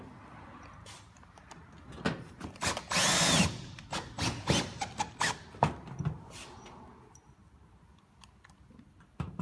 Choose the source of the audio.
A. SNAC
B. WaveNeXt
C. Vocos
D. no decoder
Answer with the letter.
D